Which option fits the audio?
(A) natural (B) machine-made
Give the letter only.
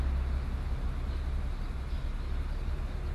A